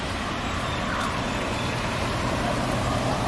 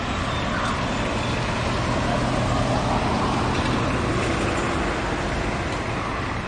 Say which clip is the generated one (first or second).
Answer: first